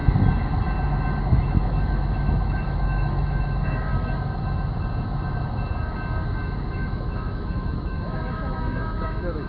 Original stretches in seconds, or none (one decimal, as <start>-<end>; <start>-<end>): 0.0-1.2; 3.9-6.7